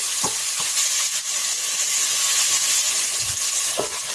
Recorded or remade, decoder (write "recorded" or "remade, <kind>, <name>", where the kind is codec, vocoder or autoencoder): remade, vocoder, Vocos